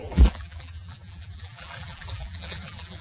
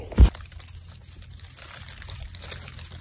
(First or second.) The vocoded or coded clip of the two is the first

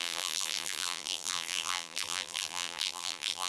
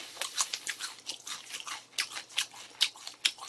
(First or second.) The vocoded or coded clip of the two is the first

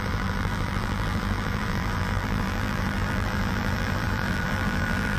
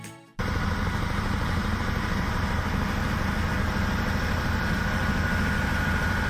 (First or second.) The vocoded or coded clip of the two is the first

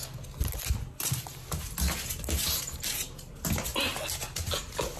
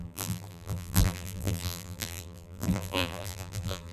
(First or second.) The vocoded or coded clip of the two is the second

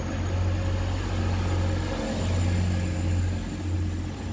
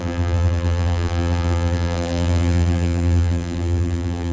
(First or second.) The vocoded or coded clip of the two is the second